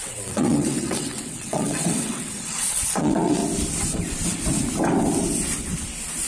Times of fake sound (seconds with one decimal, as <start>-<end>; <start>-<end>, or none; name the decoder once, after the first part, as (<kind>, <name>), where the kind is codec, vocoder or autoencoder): 0.0-3.4 (vocoder, WaveNeXt)